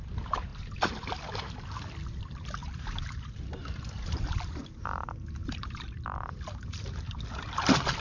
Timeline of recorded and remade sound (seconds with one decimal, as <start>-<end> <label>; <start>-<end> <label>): 0.0-2.6 recorded; 2.6-7.2 remade; 7.2-8.0 recorded